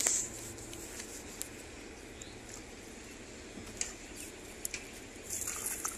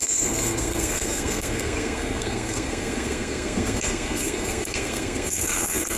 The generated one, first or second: second